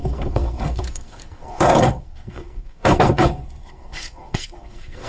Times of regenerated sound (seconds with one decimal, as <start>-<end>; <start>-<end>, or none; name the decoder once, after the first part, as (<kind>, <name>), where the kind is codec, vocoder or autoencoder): 0.0-5.1 (codec, SNAC)